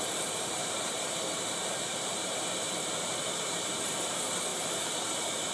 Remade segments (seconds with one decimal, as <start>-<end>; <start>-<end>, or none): 0.0-5.5